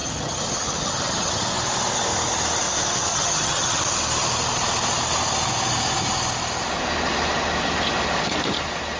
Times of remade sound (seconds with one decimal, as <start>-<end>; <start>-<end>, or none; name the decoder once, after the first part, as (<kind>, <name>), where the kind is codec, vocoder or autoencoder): 0.0-1.3 (vocoder, HiFi-GAN); 3.1-3.8